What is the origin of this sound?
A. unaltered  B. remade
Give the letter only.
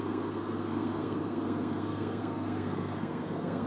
B